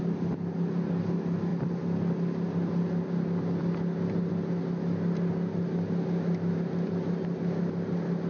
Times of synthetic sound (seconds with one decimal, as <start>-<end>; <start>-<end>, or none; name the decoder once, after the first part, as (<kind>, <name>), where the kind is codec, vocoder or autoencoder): none